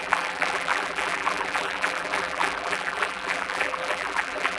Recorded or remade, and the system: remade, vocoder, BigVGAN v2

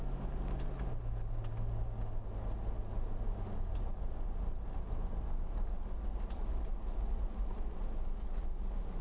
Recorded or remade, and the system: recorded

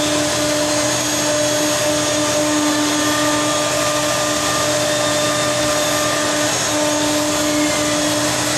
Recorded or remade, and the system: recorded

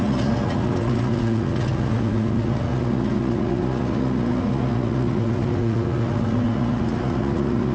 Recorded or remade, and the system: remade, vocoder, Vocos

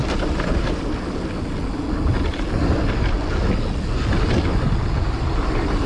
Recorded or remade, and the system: recorded